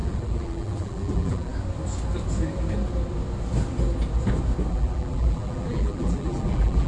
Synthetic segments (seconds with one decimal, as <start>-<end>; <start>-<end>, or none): 0.0-1.5; 4.7-6.9